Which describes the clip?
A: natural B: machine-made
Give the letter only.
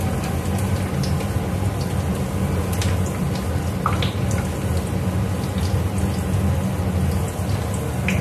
A